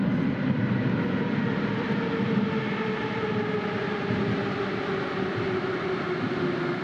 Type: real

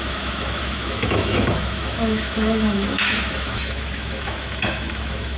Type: fake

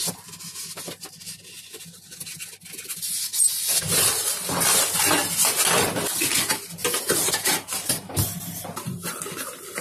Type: real